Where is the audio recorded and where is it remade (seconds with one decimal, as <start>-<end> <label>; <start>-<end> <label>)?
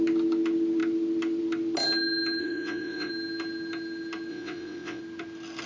0.0-2.4 recorded; 2.4-3.1 remade; 3.1-4.3 recorded; 4.3-5.0 remade; 5.0-5.7 recorded